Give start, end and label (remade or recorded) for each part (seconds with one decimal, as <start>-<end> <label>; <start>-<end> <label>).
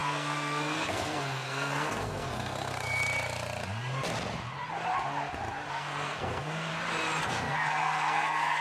0.0-3.0 remade; 3.0-5.7 recorded; 5.7-6.7 remade; 6.7-7.2 recorded; 7.2-8.6 remade